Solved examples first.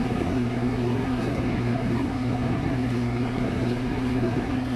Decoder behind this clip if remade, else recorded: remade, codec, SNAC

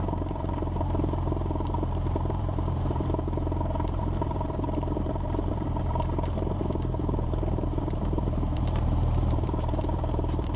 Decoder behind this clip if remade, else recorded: remade, vocoder, BigVGAN v2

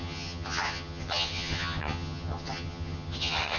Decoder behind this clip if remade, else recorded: remade, vocoder, HiFi-GAN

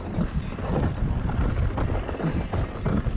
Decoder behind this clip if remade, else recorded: recorded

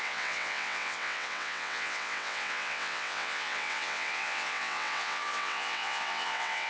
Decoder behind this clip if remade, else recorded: remade, vocoder, WaveNeXt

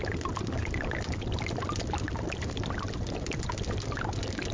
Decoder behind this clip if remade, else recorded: recorded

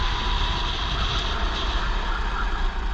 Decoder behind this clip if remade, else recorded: recorded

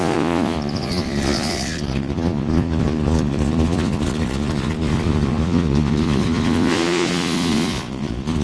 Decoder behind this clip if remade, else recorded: remade, vocoder, Vocos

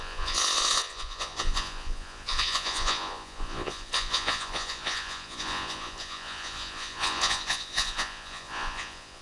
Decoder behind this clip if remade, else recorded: remade, vocoder, Vocos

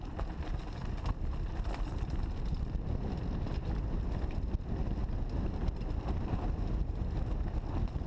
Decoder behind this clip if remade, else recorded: recorded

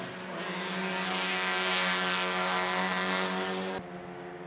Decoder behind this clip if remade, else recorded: recorded